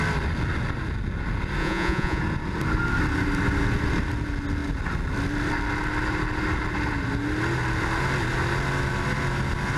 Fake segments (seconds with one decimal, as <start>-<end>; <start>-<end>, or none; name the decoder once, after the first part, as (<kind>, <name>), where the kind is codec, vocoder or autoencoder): 1.6-2.2 (vocoder, Vocos)